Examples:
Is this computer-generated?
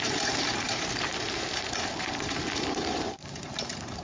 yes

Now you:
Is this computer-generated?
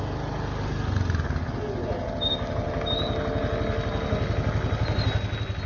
no